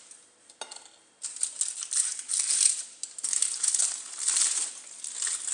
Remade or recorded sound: recorded